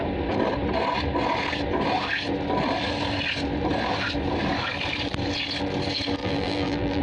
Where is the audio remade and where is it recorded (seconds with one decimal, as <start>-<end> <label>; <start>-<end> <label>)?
0.0-6.2 recorded; 6.2-7.0 remade